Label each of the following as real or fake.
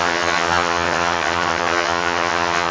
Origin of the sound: fake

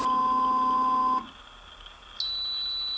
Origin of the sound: real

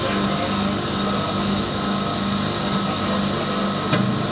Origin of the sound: real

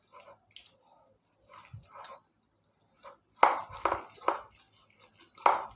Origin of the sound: real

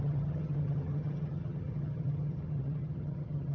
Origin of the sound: fake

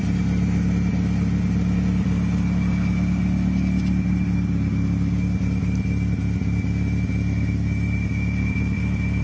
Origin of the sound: real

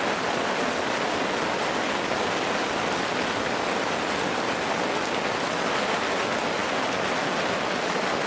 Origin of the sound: real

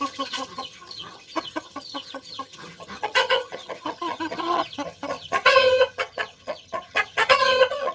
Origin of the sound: fake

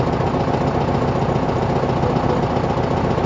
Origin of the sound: real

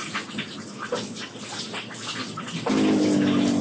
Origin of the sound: real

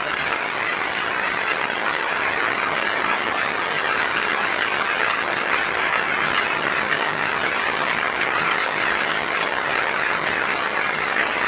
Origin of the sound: fake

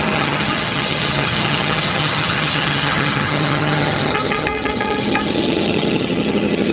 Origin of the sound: fake